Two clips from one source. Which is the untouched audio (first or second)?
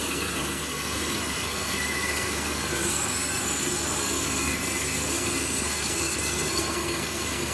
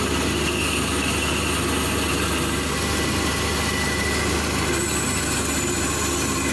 second